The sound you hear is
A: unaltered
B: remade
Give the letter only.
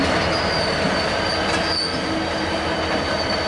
A